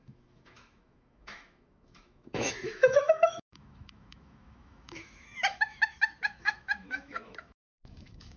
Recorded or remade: remade